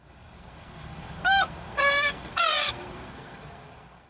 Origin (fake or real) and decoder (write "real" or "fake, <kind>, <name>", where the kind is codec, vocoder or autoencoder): fake, codec, SNAC